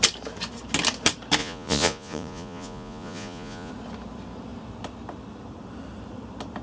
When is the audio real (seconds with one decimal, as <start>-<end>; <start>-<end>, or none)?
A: 0.0-1.4; 3.7-6.6